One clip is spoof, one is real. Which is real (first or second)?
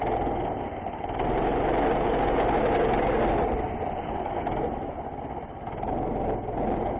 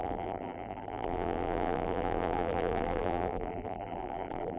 first